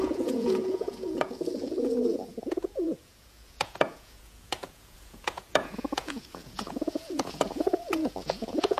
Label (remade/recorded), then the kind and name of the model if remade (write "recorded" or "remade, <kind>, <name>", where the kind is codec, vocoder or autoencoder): remade, vocoder, Vocos